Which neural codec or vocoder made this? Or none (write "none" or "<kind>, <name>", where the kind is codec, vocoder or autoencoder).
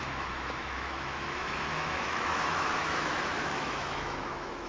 autoencoder, DAC-VAE